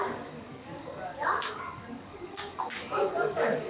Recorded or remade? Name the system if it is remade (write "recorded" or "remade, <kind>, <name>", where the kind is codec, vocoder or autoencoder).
remade, codec, DAC